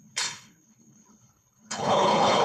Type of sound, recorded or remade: remade